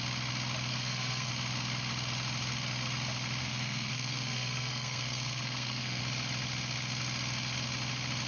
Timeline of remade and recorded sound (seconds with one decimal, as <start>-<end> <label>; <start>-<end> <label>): 0.0-0.7 recorded; 0.7-1.3 remade; 1.3-3.4 recorded; 3.4-6.0 remade; 6.0-8.3 recorded